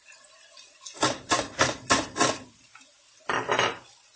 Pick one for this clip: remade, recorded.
recorded